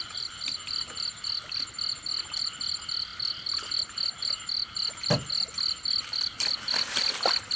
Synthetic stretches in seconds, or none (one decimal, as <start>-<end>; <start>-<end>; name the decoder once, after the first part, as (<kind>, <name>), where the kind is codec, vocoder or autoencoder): 0.0-3.1 (vocoder, BigVGAN v2); 3.8-4.8; 5.5-7.6